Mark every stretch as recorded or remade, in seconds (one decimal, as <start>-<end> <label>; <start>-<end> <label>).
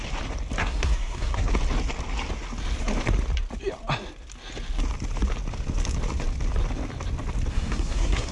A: 0.0-0.6 recorded; 0.6-1.5 remade; 1.5-7.5 recorded; 7.5-8.3 remade